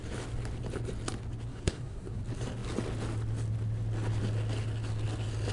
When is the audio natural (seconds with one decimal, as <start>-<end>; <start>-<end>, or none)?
0.0-1.5; 2.2-5.5